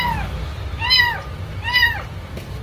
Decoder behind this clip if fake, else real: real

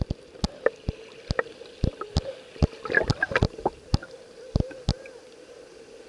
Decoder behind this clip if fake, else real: real